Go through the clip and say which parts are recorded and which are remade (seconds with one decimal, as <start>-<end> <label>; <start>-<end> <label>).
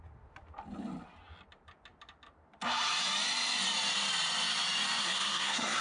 0.0-5.0 recorded; 5.0-5.8 remade